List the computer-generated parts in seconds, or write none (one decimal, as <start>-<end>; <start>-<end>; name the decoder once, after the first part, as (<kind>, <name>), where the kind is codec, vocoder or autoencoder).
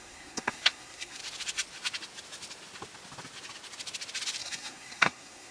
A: 0.0-1.2 (codec, SNAC); 4.4-5.5